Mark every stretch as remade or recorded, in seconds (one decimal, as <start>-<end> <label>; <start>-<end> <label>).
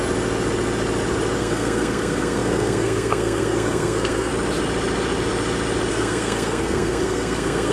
0.0-1.4 recorded; 1.4-4.3 remade; 4.3-5.9 recorded; 5.9-7.7 remade